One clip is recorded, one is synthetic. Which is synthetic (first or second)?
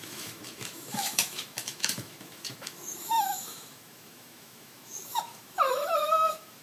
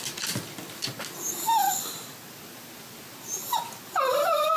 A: first